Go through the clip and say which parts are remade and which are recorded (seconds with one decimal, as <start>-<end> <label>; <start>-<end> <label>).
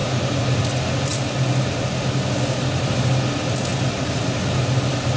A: 0.0-5.2 recorded